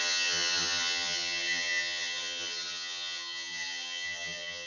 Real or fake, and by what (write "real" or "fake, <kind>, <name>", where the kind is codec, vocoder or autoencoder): fake, vocoder, HiFi-GAN